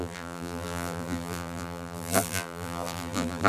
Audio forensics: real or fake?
fake